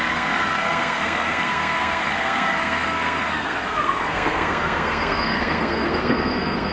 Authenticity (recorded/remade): remade